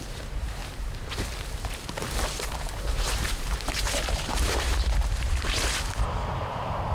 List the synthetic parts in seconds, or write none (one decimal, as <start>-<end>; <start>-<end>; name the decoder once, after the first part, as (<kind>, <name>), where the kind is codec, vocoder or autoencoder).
0.0-0.6 (vocoder, BigVGAN v2); 2.3-6.9